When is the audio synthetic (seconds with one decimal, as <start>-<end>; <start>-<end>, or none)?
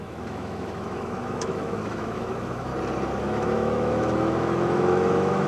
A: 0.0-2.7; 3.2-5.5